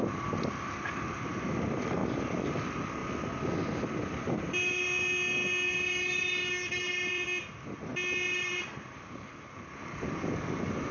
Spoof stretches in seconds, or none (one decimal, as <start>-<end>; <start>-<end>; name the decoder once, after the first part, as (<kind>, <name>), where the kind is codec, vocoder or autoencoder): none